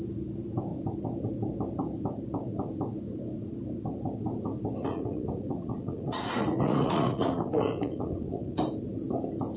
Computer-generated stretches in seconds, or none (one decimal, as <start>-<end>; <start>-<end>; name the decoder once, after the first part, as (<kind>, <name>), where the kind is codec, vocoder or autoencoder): 4.8-8.6 (vocoder, Vocos)